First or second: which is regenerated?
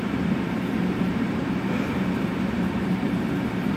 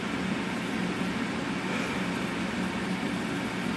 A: first